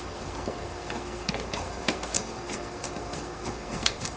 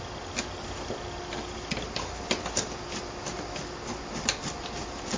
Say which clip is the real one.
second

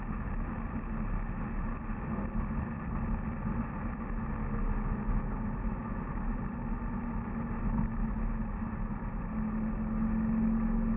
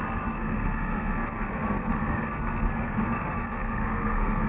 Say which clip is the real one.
first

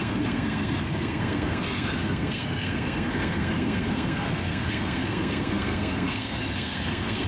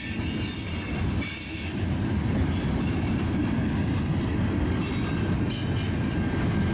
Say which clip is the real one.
second